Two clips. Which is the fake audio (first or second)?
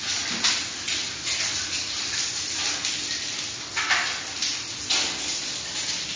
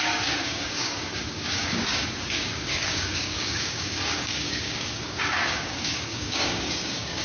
second